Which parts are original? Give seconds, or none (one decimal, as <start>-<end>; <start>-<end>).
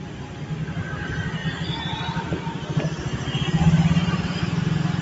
0.0-5.0